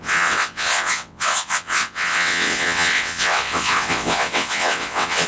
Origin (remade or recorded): remade